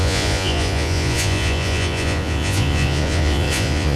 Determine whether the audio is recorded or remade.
remade